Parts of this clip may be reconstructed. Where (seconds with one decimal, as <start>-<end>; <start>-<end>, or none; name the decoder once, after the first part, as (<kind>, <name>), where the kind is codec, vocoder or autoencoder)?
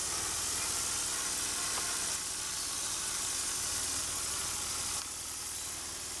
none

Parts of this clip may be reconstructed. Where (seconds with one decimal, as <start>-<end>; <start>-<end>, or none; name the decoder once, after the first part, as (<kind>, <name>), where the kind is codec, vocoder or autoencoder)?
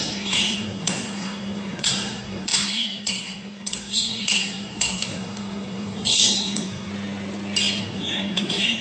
0.0-6.9 (codec, SNAC); 7.8-8.8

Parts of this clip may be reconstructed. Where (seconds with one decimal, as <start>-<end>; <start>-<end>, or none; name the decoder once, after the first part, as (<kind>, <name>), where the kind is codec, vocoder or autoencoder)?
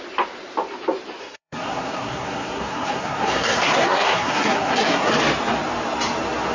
1.2-5.1 (codec, SNAC)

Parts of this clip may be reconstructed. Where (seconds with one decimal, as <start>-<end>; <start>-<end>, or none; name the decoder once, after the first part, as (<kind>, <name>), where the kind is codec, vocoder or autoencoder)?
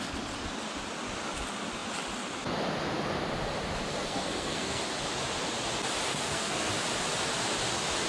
3.9-4.8 (codec, SNAC); 6.1-6.7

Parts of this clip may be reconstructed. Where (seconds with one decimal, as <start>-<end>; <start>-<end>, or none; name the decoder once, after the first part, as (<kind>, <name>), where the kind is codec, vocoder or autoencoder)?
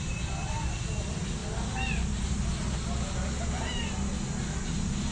none